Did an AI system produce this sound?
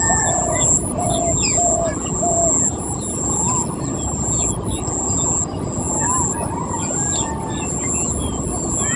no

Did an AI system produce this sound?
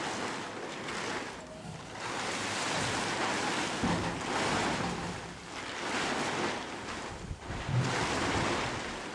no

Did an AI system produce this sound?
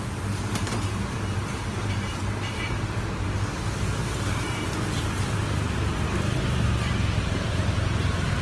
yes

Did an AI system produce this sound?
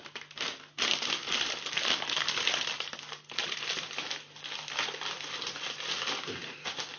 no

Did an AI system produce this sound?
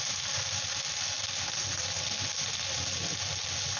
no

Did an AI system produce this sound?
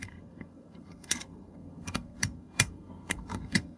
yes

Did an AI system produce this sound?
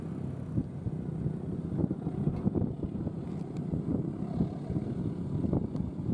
no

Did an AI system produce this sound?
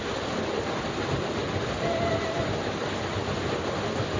no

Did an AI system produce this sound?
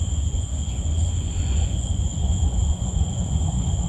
yes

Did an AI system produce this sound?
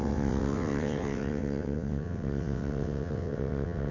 yes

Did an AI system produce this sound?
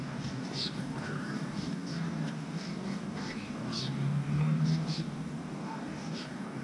yes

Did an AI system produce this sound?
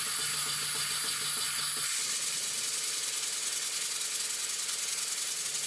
no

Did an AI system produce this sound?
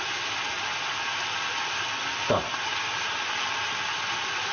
yes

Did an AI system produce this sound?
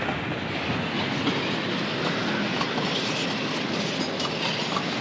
no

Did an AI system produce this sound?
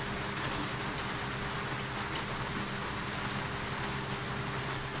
no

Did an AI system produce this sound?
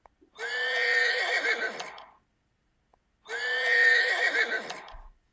no